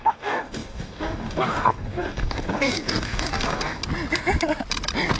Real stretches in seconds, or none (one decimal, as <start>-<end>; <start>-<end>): 3.8-5.2